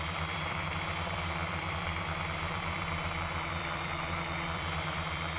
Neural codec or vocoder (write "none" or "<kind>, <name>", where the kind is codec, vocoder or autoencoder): vocoder, BigVGAN v2